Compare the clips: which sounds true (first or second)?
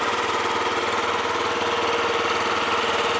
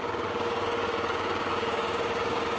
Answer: first